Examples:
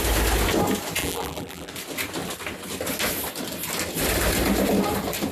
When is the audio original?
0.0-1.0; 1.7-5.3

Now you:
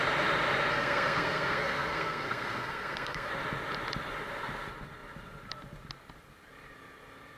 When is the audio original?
0.0-0.7; 3.3-7.4

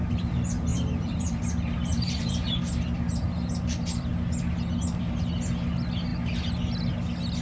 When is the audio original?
0.0-0.7; 1.4-1.9; 2.5-7.4

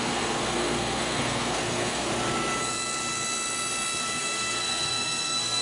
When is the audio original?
2.1-4.0